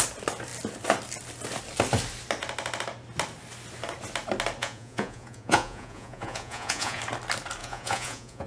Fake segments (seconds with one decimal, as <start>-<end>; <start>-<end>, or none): 4.6-7.0; 7.6-8.5